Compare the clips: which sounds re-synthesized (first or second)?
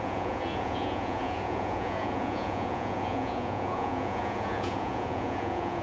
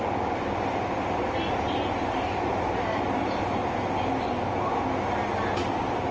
first